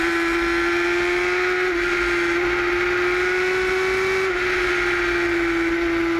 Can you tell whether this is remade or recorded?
recorded